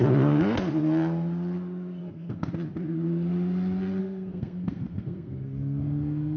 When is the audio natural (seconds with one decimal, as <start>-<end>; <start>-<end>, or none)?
0.0-2.0; 2.5-4.0